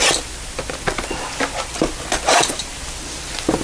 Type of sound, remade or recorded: recorded